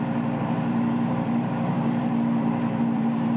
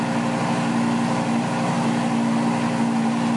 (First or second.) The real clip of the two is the second